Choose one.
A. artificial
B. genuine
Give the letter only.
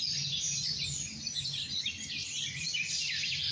B